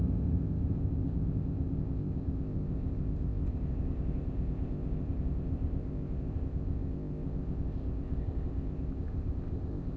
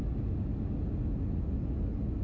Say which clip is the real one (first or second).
second